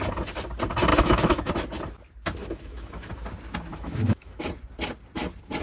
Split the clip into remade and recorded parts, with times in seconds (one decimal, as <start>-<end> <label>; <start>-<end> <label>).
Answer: 0.0-0.9 recorded; 0.9-1.5 remade; 1.5-2.4 recorded; 2.4-3.1 remade; 3.1-3.7 recorded; 3.7-4.4 remade; 4.4-5.6 recorded